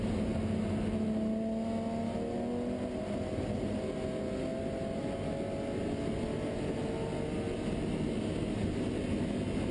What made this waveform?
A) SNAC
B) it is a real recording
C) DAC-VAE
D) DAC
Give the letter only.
B